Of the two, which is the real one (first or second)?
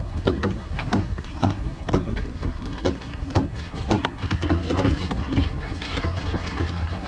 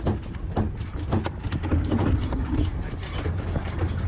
second